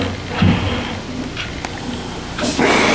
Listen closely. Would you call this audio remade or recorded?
recorded